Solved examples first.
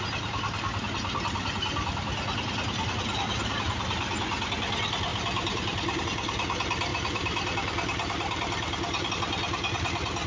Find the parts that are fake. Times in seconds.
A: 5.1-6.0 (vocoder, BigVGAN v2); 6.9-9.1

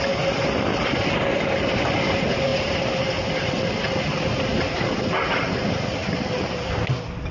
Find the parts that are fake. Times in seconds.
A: 2.5-3.7 (vocoder, BigVGAN v2); 4.5-5.3; 6.0-6.7

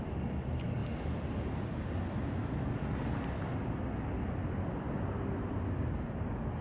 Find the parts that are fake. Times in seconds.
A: none

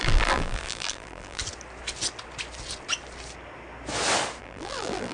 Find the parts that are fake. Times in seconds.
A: 0.0-1.4 (vocoder, BigVGAN v2); 4.4-5.1

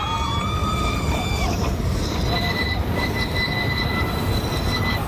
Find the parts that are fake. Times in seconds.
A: 0.6-3.1 (vocoder, BigVGAN v2)